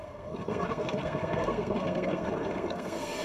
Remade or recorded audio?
remade